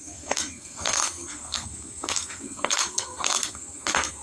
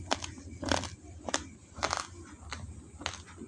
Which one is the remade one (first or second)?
first